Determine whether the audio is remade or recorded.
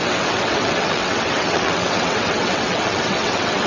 remade